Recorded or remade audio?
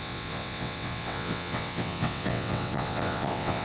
remade